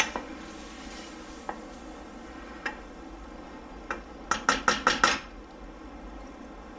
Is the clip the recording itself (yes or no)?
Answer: yes